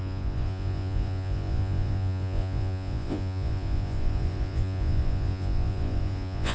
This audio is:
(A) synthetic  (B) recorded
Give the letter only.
A